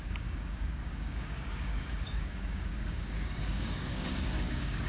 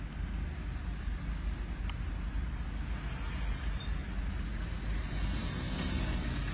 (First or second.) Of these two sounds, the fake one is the first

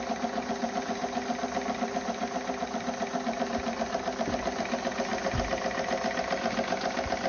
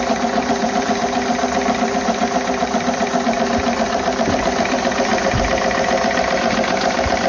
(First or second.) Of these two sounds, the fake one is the second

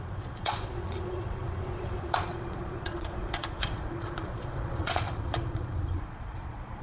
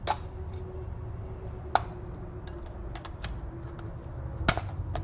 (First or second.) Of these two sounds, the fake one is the first